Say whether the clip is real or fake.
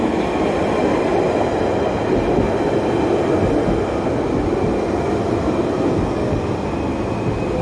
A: real